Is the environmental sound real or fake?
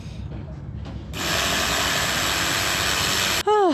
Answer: real